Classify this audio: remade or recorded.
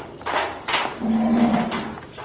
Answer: recorded